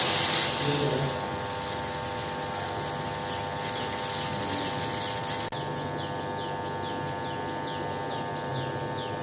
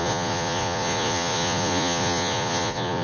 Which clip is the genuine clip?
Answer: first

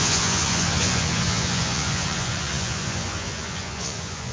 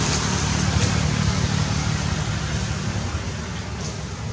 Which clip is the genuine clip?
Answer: second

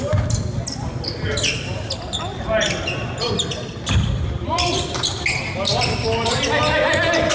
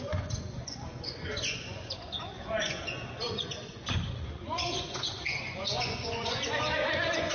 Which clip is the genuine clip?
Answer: first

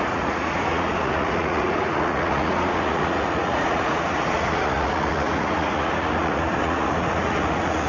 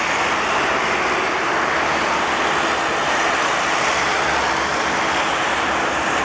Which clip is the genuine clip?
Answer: second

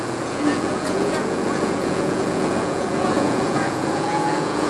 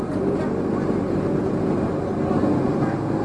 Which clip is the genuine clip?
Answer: second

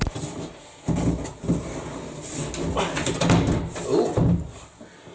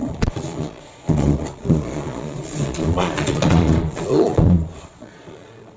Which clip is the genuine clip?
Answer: first